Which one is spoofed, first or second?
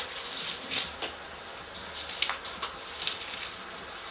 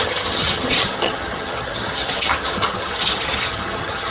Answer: second